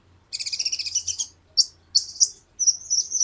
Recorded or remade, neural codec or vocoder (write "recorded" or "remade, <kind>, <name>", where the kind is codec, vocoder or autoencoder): recorded